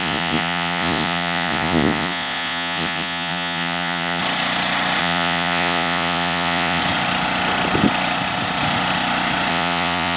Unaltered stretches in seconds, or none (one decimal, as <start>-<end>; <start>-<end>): 4.2-5.0; 6.8-9.5